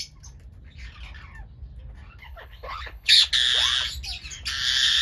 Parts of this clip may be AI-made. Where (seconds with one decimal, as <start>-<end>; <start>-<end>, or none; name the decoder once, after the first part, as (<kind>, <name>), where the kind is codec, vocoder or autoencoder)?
2.2-3.3 (codec, HILCodec)